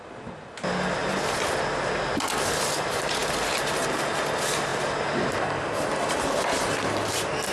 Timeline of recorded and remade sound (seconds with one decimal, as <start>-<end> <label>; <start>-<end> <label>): 0.0-7.5 recorded